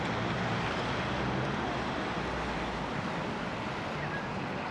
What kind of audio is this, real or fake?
real